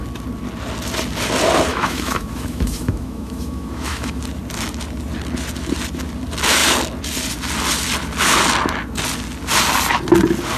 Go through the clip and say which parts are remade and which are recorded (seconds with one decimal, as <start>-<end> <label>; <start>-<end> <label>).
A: 0.0-1.7 recorded; 1.7-4.2 remade; 4.2-10.6 recorded